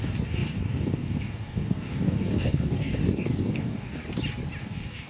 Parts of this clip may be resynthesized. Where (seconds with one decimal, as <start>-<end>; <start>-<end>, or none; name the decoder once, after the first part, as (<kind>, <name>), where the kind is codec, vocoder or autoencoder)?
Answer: 0.0-4.0 (codec, DAC); 4.6-5.1